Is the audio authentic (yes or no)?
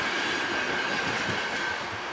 yes